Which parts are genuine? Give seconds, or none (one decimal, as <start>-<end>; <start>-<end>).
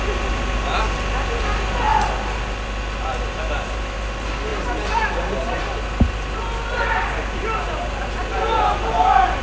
0.0-9.4